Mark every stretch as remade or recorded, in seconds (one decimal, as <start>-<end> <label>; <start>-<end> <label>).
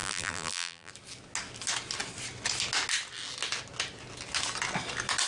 0.0-0.9 remade; 0.9-5.3 recorded